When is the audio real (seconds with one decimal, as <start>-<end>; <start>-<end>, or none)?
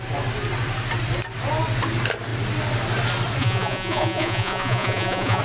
0.0-3.4